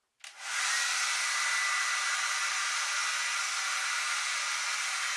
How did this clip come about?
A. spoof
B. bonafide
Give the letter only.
B